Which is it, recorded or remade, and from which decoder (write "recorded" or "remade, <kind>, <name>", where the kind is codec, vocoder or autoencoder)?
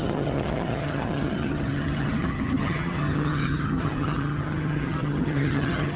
remade, vocoder, HiFi-GAN